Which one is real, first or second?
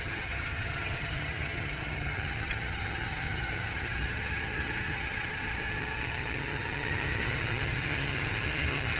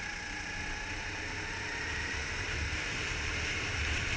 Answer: second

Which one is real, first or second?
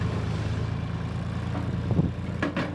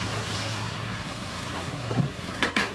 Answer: first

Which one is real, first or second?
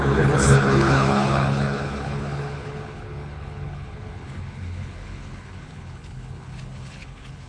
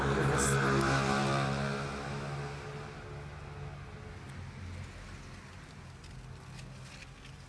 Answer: second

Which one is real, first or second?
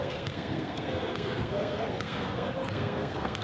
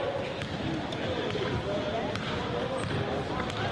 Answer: second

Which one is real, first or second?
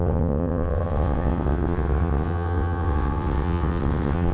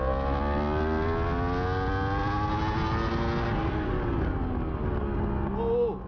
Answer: second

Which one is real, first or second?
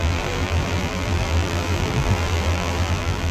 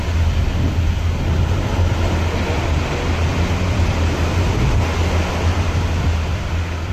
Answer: second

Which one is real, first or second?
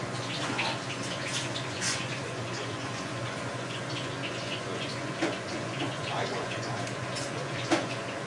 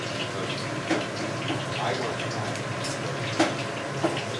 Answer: second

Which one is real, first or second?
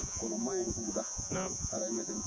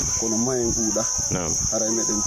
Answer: second